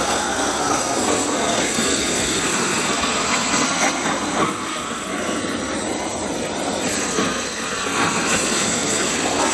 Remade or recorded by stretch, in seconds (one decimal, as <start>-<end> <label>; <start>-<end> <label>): 0.0-5.4 remade; 5.4-7.0 recorded; 7.0-9.5 remade